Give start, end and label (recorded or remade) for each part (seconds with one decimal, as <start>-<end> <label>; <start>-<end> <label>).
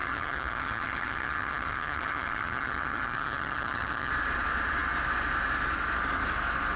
0.0-4.1 remade; 4.1-6.8 recorded